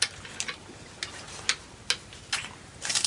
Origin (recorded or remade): recorded